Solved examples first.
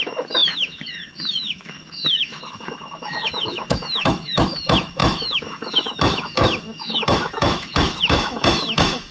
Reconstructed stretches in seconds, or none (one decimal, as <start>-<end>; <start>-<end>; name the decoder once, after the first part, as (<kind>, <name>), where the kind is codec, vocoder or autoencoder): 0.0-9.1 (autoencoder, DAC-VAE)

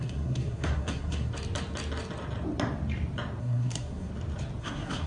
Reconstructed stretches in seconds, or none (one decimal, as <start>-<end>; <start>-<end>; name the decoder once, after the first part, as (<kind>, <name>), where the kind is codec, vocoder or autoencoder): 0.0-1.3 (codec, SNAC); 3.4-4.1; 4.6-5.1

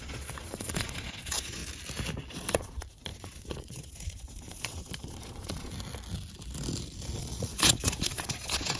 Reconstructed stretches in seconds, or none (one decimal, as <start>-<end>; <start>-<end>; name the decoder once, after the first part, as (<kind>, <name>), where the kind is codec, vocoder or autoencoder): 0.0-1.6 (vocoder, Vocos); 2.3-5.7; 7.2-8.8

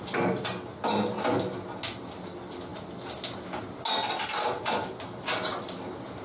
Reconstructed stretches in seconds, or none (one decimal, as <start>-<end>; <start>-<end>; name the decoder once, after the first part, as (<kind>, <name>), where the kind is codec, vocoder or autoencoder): none

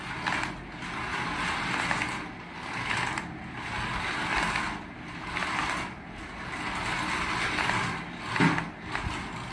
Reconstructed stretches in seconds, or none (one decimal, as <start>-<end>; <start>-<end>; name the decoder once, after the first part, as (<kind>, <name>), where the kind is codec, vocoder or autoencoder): none

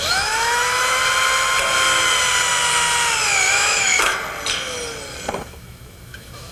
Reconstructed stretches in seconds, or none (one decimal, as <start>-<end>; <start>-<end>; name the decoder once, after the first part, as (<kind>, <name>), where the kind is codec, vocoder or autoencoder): 0.0-1.0 (autoencoder, DAC-VAE); 3.5-4.1; 5.4-6.5

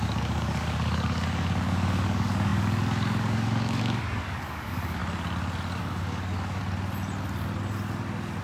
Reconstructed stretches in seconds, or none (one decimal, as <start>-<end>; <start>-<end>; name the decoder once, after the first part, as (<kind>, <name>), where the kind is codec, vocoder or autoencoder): 0.0-5.0 (codec, DAC); 5.8-6.6

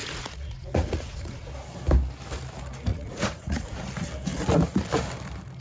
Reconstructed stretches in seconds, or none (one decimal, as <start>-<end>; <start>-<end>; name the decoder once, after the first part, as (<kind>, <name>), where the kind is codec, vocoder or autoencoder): 0.0-1.5 (vocoder, Vocos); 2.9-3.8